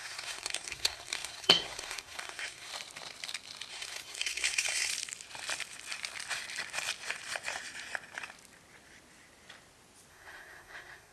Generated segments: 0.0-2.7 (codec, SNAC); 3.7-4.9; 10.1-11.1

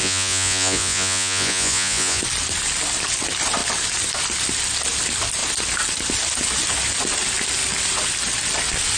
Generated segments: 0.0-2.2 (vocoder, Vocos)

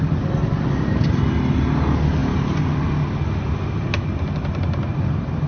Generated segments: none

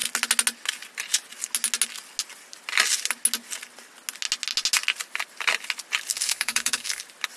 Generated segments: 6.1-7.0 (codec, DAC)